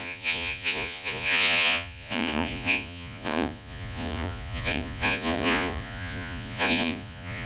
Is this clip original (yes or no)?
no